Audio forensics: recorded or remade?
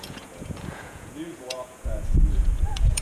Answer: remade